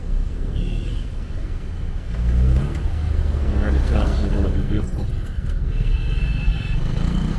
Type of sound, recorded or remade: remade